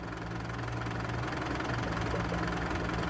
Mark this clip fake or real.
real